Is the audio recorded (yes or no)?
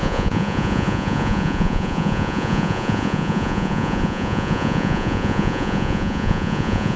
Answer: no